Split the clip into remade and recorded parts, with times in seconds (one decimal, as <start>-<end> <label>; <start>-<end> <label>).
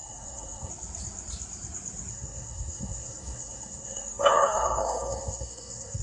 0.0-0.7 remade; 0.7-2.1 recorded; 2.1-6.0 remade